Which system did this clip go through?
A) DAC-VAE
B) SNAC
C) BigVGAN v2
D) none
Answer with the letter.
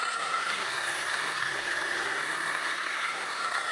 B